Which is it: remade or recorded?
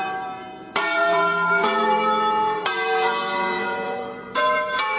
remade